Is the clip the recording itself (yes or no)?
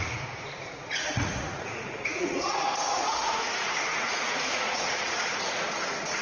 no